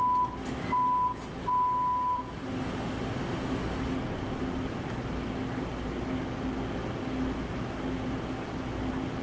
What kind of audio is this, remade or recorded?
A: recorded